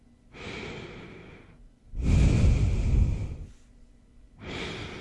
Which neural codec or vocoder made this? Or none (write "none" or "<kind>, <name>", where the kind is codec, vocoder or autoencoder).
none